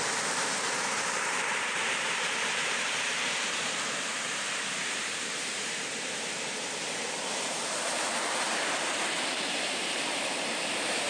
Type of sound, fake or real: fake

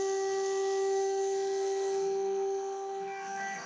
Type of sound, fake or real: fake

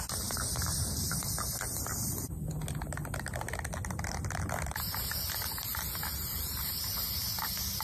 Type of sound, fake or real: real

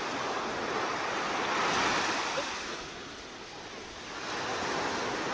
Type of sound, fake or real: real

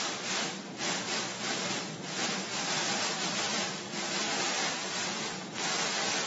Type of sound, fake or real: real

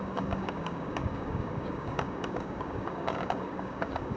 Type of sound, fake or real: fake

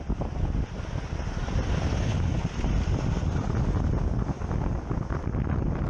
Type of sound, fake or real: real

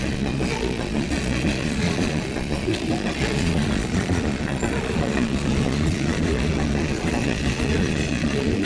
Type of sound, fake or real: fake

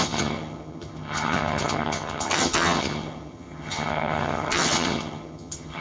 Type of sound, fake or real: fake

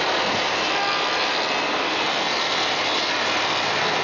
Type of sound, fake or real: real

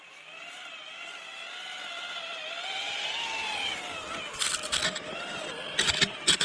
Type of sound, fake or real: real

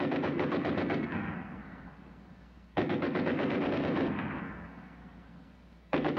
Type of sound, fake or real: fake